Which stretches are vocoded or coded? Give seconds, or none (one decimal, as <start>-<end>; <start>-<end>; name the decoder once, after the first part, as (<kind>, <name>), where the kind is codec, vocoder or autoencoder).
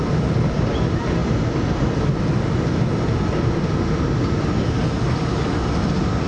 none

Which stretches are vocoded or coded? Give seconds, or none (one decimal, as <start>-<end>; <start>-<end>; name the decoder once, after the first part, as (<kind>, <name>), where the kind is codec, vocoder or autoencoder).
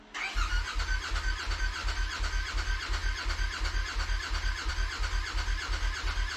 none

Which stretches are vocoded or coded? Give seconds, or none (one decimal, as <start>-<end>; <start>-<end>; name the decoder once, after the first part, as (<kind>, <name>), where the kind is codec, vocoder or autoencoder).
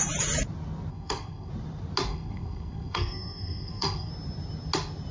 0.9-1.5 (codec, SNAC); 2.1-4.1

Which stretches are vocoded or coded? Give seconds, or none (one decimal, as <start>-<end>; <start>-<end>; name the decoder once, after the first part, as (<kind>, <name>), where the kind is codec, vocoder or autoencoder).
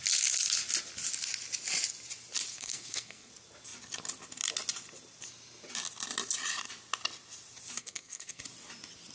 2.5-3.3 (codec, SNAC); 7.8-8.4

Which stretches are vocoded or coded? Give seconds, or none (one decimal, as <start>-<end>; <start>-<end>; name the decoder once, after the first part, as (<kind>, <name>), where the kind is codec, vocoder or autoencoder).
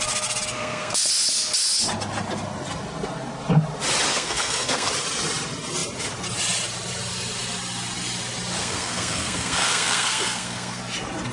0.6-1.1 (codec, SNAC); 4.1-4.9; 8.6-10.8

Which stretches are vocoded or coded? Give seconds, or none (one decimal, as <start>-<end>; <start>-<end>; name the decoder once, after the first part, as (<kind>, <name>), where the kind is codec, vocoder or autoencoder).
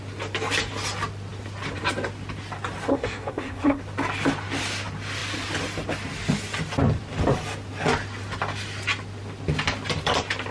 2.9-3.8 (codec, SNAC)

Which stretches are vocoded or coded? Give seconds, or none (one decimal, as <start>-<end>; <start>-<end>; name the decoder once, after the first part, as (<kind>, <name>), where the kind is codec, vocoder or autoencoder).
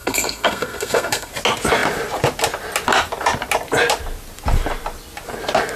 0.0-1.3 (codec, SNAC)